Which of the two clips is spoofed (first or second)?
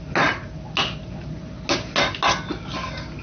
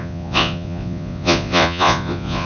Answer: second